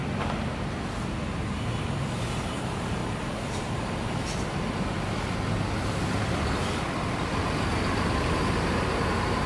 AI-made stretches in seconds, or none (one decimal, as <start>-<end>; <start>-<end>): 3.0-3.8; 7.7-8.4